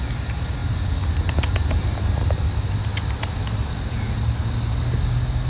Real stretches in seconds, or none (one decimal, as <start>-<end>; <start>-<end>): 0.0-5.5